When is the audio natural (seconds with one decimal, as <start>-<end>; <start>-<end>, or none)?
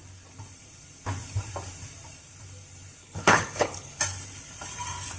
0.0-3.0; 4.0-5.2